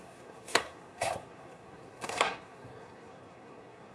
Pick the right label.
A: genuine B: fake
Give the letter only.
B